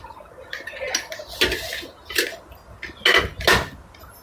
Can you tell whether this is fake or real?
real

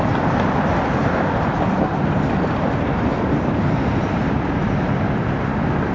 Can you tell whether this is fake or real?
real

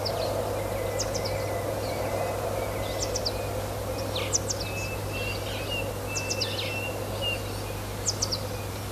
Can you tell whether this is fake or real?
real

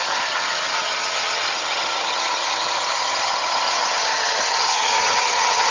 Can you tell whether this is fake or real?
fake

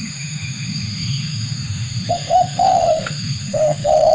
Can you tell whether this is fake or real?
fake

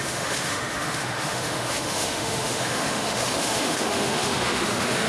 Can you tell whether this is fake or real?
fake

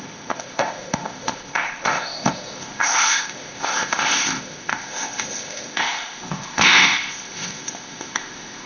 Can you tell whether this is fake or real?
fake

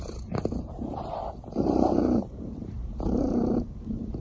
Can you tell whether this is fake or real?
fake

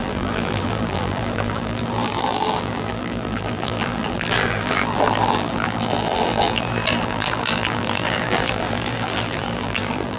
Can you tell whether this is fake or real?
fake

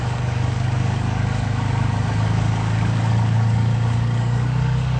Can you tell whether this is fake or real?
fake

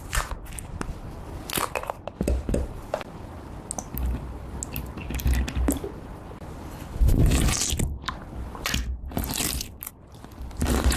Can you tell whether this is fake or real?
real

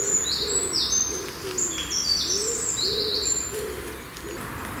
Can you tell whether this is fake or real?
real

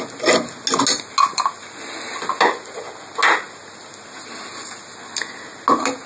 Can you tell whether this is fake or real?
real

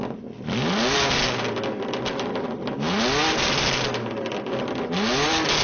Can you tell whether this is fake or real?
real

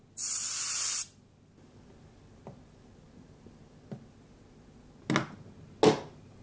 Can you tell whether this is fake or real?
real